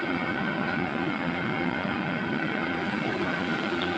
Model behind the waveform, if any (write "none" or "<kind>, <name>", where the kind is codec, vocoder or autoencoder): vocoder, Vocos